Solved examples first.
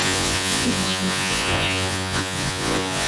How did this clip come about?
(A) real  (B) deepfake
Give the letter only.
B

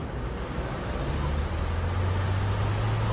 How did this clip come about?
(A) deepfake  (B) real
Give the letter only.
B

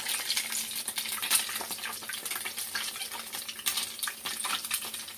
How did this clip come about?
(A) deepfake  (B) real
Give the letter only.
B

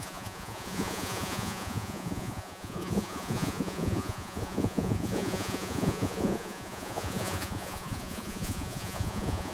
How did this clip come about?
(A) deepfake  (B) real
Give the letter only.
A